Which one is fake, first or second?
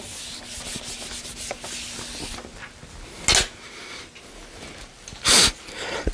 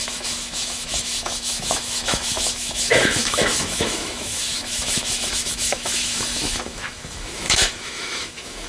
second